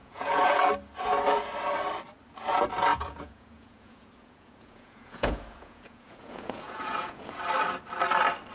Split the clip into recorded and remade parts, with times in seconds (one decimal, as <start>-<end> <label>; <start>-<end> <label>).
0.0-0.7 remade; 0.7-2.9 recorded; 2.9-7.4 remade; 7.4-8.5 recorded